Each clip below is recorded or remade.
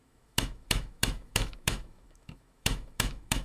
remade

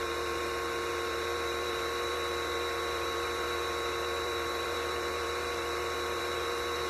remade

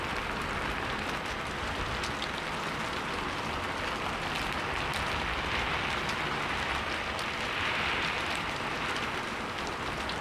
recorded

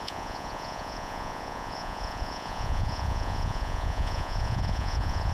remade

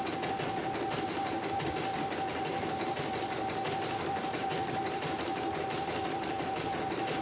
recorded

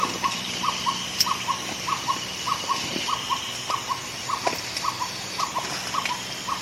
remade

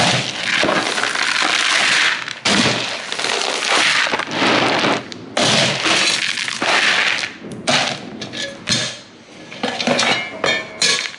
recorded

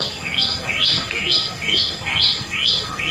remade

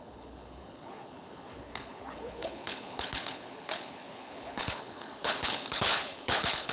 remade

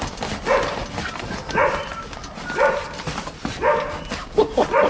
recorded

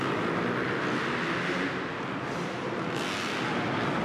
recorded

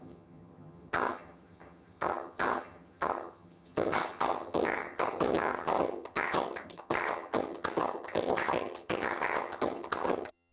remade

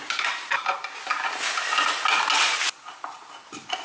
recorded